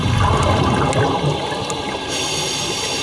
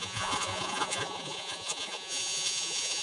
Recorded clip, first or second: first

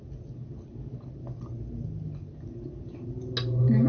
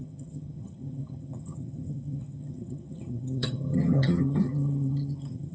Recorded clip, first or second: first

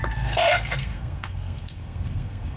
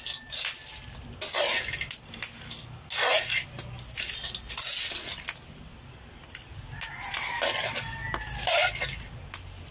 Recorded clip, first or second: second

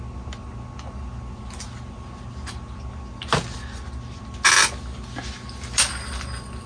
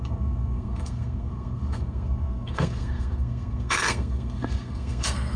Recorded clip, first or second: first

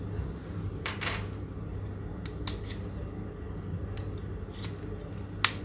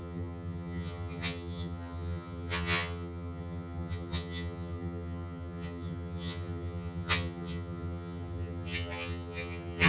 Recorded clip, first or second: first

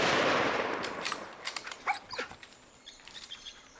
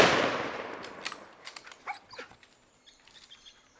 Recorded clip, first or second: second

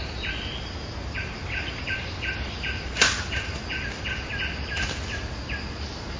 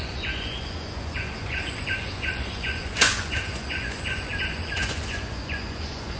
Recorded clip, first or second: first